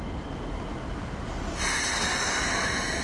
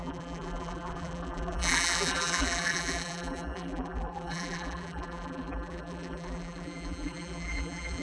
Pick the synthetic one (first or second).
second